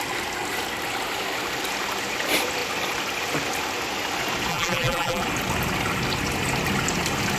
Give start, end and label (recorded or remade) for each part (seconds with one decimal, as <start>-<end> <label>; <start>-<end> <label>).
0.0-4.5 recorded; 4.5-5.2 remade; 5.2-7.4 recorded